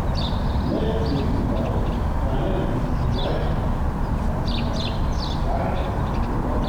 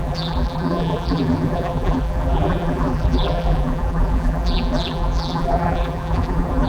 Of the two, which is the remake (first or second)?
second